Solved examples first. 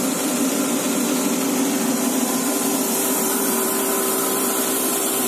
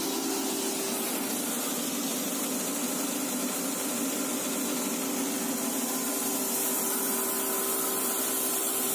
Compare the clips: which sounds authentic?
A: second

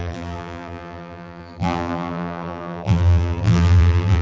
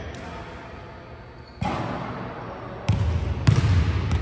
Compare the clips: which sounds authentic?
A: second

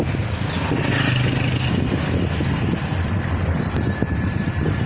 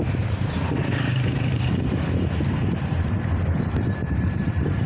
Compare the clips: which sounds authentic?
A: first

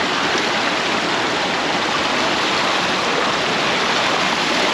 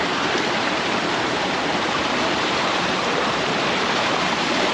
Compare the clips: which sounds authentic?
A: first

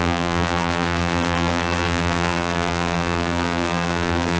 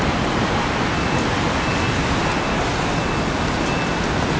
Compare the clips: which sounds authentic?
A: second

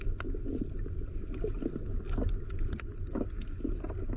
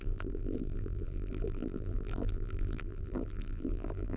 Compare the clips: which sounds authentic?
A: first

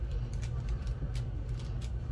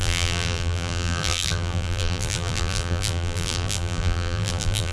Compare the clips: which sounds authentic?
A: first